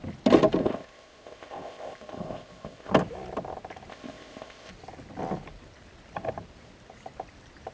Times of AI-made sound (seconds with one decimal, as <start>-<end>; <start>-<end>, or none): 0.6-2.9; 3.9-4.7